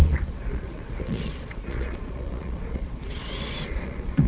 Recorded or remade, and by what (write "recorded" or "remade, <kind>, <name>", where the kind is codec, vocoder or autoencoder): remade, vocoder, Vocos